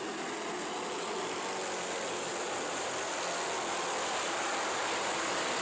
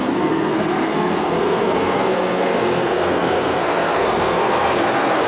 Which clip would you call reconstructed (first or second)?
second